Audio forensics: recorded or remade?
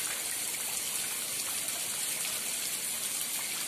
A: recorded